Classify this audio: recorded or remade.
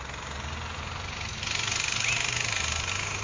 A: recorded